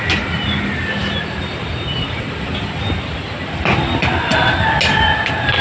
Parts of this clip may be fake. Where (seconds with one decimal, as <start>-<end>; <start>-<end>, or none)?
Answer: none